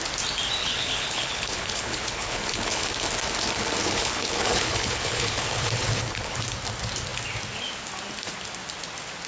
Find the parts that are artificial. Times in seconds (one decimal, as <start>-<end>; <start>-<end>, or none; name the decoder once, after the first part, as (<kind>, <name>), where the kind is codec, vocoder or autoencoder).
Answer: 0.6-2.9 (codec, HILCodec); 3.8-6.4